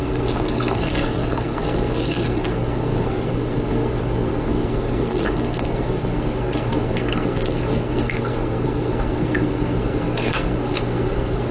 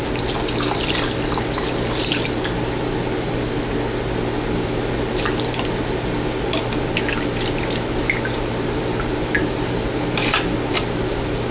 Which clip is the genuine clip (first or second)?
second